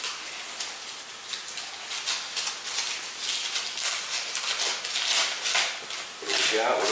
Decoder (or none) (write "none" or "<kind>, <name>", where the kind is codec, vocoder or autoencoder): none